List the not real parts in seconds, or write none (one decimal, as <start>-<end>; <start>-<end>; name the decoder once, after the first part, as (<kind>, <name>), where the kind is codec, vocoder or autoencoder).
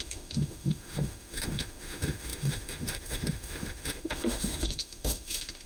0.0-5.7 (autoencoder, DAC-VAE)